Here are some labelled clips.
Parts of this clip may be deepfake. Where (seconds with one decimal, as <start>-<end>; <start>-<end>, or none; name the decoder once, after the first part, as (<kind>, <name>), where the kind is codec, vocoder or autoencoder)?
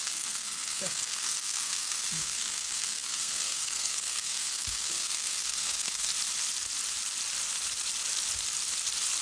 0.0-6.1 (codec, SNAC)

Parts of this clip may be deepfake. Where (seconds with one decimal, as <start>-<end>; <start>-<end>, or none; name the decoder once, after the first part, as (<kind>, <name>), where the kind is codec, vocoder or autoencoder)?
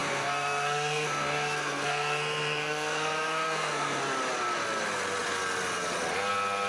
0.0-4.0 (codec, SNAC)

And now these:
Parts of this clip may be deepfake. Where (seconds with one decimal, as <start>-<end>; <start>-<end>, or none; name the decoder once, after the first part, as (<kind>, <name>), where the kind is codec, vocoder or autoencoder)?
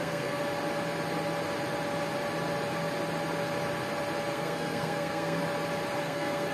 0.0-0.4 (codec, SNAC); 4.3-5.4; 6.0-6.5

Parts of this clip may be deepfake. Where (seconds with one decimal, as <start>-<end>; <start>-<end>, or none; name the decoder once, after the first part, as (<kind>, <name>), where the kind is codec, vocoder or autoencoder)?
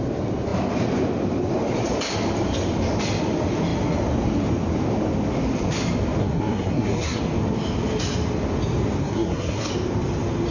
6.2-7.2 (codec, SNAC); 9.0-9.7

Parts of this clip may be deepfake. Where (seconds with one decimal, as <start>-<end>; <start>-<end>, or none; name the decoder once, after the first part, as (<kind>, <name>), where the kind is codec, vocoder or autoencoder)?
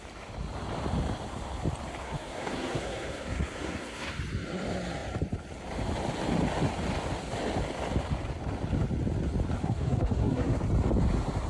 2.0-4.2 (codec, SNAC); 9.6-10.6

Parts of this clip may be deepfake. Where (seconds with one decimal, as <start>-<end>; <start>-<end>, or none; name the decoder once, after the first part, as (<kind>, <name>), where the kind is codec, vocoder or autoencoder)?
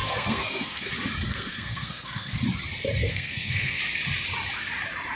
0.0-0.9 (codec, SNAC); 1.3-2.4; 3.0-3.8